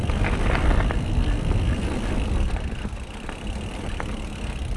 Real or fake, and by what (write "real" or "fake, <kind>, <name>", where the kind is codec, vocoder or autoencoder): real